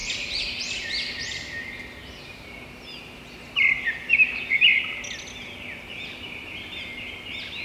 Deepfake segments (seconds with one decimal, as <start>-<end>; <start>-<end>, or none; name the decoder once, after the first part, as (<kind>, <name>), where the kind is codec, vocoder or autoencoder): none